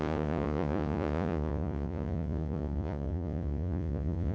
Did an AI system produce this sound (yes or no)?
yes